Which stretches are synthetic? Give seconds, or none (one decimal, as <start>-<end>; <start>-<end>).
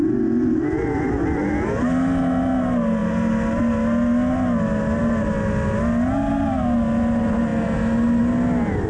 none